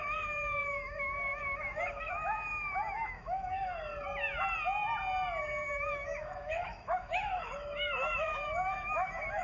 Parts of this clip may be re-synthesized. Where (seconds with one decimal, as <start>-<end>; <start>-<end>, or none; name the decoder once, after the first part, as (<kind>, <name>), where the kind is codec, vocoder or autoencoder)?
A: 0.0-3.9 (autoencoder, DAC-VAE); 5.4-9.4